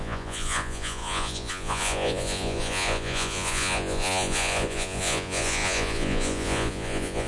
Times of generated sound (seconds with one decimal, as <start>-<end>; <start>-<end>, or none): 0.0-7.3

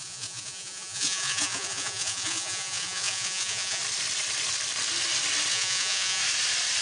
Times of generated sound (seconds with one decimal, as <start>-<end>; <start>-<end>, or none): 0.0-3.8; 5.5-6.2

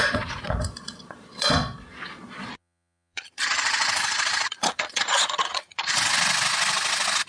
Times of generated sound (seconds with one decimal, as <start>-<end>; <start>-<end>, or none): 0.0-6.1

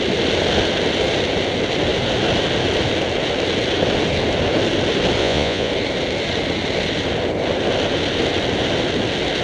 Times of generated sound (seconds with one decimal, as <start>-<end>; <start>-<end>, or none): 5.2-5.7

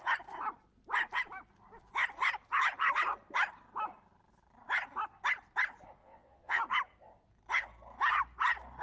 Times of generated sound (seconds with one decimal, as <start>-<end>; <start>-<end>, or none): 6.0-6.6

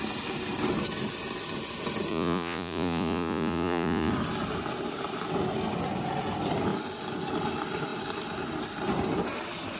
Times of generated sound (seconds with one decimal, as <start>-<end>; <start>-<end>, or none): 2.1-4.1

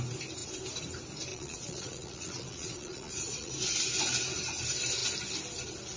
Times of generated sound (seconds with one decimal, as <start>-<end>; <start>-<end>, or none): 1.3-3.5

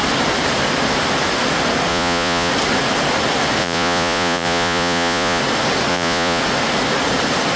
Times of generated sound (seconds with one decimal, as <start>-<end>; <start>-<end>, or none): 1.9-2.5; 3.6-5.4; 5.9-6.4